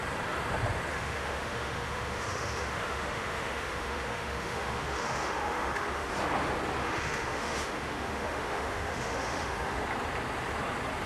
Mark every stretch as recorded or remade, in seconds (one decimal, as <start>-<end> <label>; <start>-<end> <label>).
0.0-0.9 recorded; 0.9-6.1 remade; 6.1-6.8 recorded; 6.8-9.8 remade; 9.8-11.1 recorded